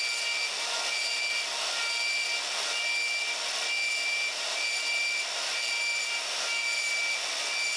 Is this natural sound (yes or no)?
yes